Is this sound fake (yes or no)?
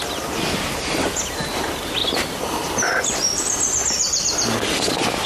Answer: no